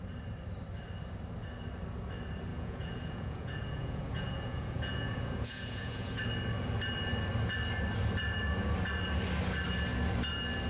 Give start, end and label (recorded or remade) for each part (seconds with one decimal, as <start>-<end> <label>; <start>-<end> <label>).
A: 0.0-2.5 recorded; 2.5-6.2 remade; 6.2-10.7 recorded

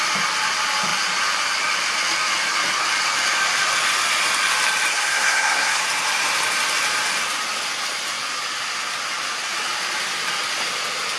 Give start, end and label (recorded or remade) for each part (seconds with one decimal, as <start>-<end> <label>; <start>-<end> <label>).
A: 0.0-4.9 recorded; 4.9-5.8 remade; 5.8-11.2 recorded

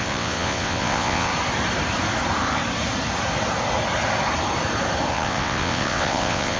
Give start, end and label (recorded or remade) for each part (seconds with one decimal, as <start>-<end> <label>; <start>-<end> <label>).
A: 0.0-1.3 remade; 1.3-5.1 recorded; 5.1-6.6 remade

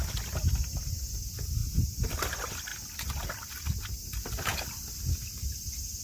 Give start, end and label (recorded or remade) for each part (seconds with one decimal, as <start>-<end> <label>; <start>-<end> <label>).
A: 0.0-6.0 recorded